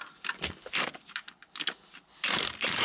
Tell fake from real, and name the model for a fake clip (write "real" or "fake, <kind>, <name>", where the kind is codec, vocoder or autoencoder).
real